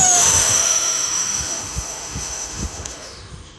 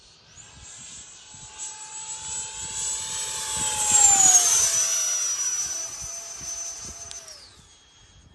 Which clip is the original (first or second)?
second